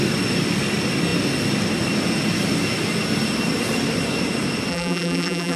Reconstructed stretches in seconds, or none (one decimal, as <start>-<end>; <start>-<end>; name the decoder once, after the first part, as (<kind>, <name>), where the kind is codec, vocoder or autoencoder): 4.7-5.6 (vocoder, BigVGAN v2)